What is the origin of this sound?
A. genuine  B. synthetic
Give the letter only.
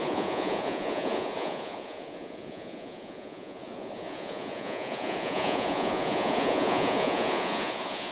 B